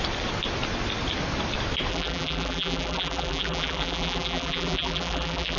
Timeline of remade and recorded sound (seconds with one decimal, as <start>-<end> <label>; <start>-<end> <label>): 0.0-1.9 recorded; 1.9-5.6 remade